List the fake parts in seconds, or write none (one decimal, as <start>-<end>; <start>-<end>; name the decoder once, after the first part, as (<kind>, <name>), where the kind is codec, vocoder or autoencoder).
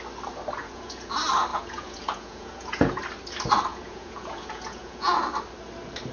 0.6-1.1 (vocoder, Vocos); 1.5-3.0; 3.7-5.2